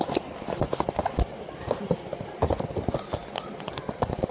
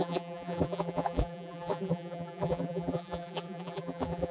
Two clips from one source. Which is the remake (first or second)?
second